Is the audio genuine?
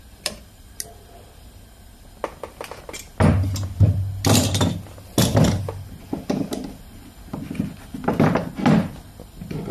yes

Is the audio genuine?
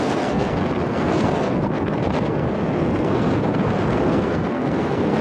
no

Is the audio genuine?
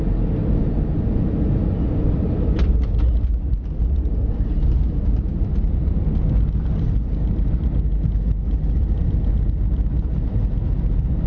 yes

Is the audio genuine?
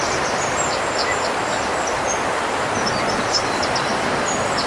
yes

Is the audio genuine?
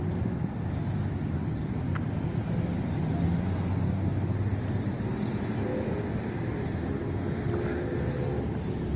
yes